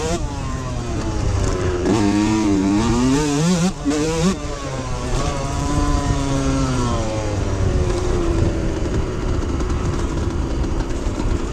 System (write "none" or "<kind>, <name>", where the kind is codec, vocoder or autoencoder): vocoder, BigVGAN v2